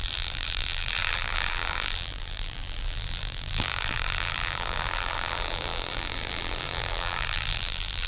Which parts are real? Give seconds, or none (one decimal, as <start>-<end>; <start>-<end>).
none